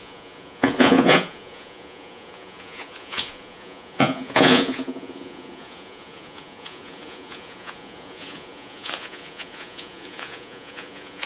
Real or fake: fake